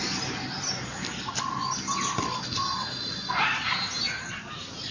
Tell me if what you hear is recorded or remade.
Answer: recorded